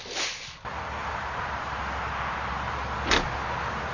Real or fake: real